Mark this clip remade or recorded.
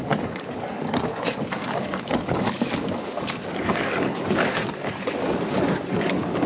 remade